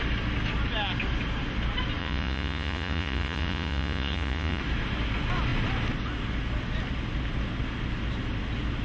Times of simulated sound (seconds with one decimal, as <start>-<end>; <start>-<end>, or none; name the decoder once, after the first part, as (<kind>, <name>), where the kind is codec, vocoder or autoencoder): 2.0-4.6 (vocoder, Vocos)